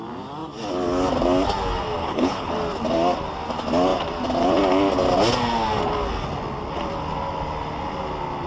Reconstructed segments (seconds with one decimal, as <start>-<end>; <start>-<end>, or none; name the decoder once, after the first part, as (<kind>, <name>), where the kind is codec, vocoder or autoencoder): 2.0-2.5 (codec, HILCodec)